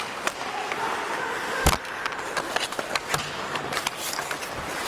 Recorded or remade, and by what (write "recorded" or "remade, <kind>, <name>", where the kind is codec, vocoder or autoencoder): recorded